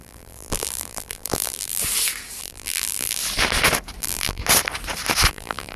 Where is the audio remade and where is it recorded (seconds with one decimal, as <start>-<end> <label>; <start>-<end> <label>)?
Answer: 0.0-1.8 remade; 1.8-2.4 recorded; 2.4-3.2 remade; 3.2-4.0 recorded; 4.0-4.4 remade; 4.4-5.3 recorded; 5.3-5.8 remade